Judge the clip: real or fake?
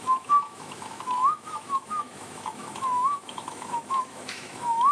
fake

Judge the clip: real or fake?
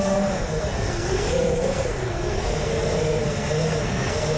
fake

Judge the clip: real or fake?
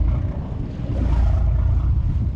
real